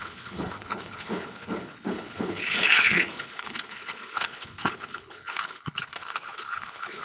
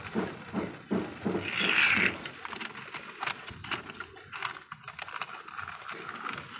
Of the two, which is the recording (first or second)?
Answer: second